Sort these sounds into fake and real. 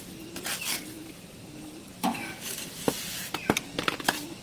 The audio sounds real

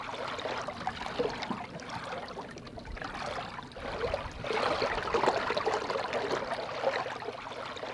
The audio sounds real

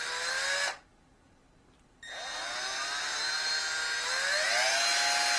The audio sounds real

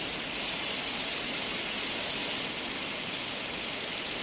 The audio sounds real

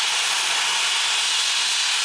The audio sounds real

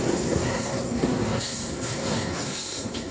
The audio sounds fake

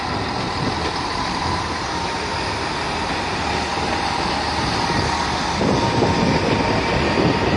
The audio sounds fake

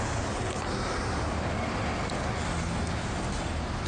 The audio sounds real